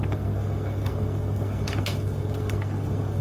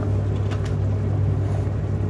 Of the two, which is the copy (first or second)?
first